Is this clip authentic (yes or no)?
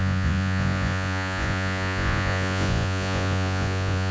no